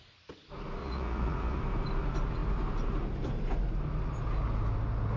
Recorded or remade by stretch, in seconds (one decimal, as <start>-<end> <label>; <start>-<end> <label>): 0.0-0.8 recorded; 0.8-1.6 remade; 1.6-5.2 recorded